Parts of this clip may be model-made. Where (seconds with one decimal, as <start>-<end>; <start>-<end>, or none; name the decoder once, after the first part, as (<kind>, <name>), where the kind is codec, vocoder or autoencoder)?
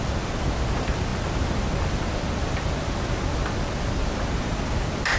none